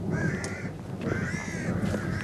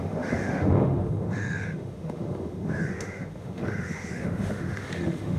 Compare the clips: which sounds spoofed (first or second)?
second